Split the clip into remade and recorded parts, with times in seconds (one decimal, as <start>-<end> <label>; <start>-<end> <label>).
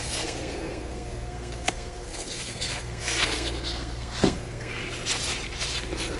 0.0-4.8 remade; 4.8-6.2 recorded